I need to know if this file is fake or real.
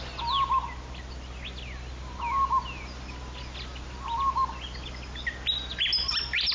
real